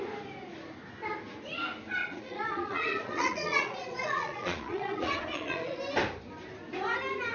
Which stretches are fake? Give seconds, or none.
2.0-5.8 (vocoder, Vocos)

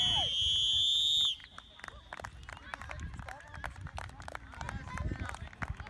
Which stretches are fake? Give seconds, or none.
none

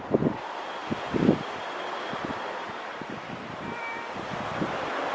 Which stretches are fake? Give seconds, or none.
none

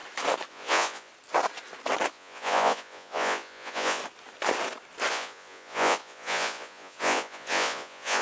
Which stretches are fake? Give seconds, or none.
0.5-1.1 (vocoder, Vocos); 2.1-4.0; 5.1-8.2